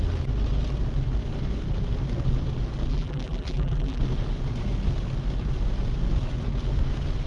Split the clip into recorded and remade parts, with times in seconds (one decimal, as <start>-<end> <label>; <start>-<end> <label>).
0.0-2.9 recorded; 2.9-4.0 remade; 4.0-7.3 recorded